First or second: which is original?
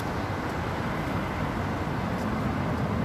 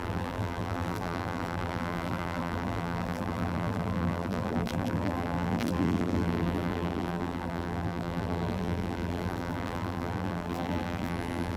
first